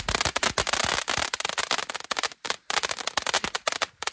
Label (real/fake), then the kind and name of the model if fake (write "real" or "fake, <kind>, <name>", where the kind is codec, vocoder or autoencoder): real